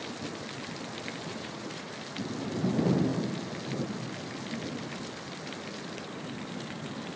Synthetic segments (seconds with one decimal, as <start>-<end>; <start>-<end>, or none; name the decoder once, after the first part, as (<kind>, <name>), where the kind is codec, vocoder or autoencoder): 1.3-1.9 (vocoder, Vocos)